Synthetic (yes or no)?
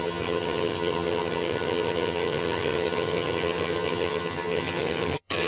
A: yes